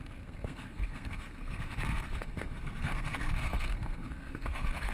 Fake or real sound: fake